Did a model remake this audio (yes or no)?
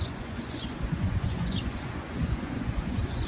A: yes